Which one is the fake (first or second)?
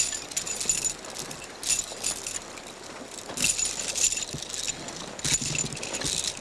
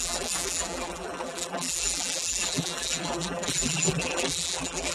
second